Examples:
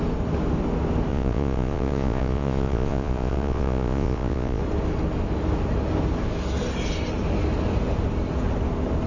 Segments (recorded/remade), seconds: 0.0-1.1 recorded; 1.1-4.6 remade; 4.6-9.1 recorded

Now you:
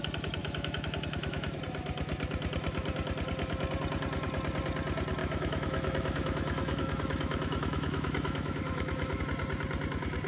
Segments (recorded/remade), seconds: 0.0-0.4 recorded; 0.4-1.6 remade; 1.6-5.2 recorded; 5.2-9.2 remade; 9.2-10.3 recorded